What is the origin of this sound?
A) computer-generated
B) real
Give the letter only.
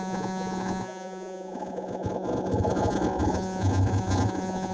A